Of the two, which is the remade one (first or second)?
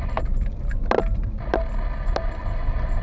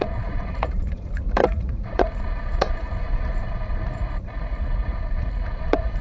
second